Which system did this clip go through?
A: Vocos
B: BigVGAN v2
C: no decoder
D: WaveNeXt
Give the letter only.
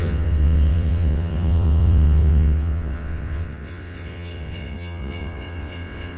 D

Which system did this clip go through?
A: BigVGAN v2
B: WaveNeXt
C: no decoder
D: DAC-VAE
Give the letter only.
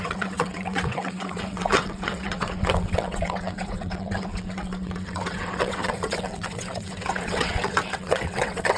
B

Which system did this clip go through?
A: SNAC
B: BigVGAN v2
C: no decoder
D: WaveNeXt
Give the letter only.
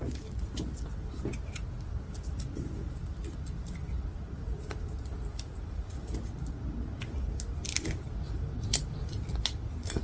C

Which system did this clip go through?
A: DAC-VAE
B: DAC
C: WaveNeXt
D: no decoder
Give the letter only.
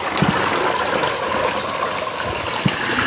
D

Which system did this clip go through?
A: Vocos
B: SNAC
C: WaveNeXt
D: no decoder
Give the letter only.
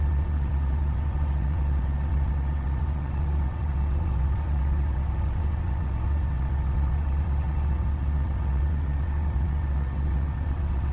C